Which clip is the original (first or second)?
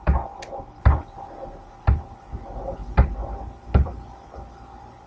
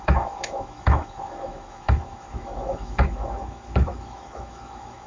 first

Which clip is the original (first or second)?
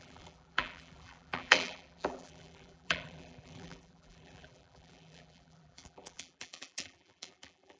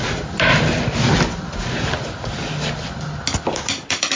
second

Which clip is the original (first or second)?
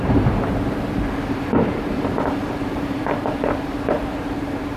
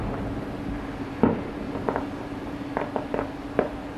second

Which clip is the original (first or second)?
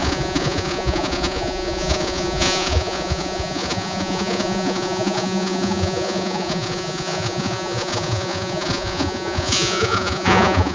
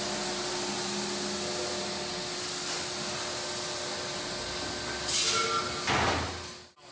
second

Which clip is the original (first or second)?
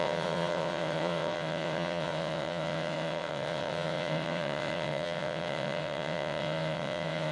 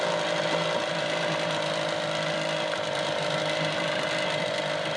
second